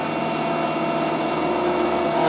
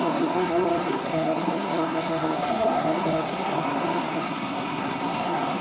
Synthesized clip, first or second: second